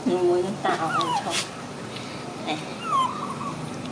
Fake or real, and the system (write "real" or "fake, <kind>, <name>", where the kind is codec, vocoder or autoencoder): real